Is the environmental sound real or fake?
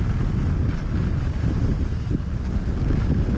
real